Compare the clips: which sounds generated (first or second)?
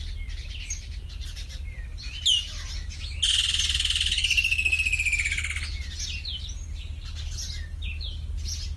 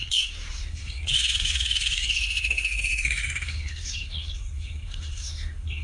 second